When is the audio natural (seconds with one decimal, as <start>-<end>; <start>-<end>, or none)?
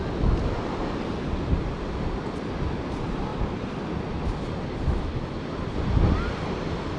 0.0-7.0